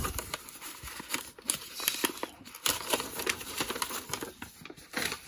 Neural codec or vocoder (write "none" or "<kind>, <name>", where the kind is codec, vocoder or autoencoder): vocoder, BigVGAN v2